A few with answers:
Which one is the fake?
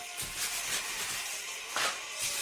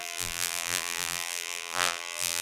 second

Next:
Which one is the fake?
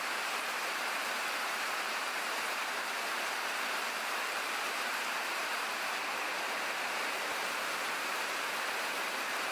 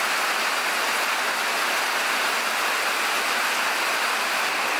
first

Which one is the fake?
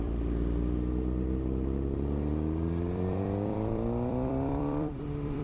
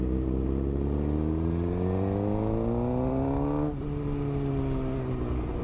first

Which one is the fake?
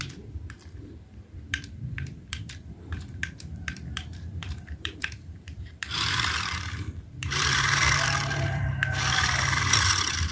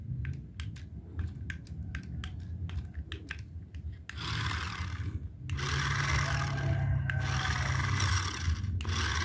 first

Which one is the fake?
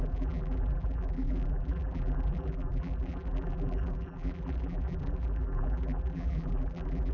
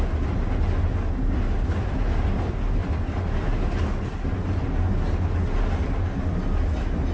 first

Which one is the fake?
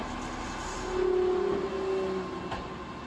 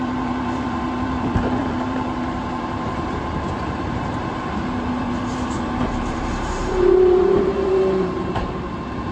second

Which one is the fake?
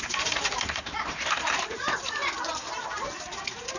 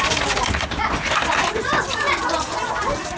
first